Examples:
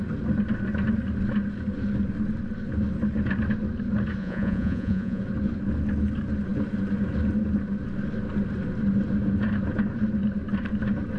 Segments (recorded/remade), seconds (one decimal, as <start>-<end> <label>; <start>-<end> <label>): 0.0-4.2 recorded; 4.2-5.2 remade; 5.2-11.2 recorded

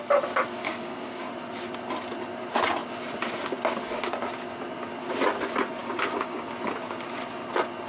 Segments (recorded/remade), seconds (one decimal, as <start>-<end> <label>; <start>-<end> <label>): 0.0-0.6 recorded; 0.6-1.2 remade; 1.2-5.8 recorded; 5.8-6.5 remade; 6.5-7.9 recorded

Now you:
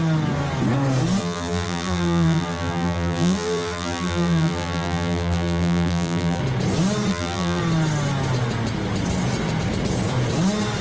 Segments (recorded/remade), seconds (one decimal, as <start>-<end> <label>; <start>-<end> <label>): 0.0-1.2 recorded; 1.2-6.4 remade; 6.4-7.1 recorded; 7.1-7.6 remade; 7.6-10.8 recorded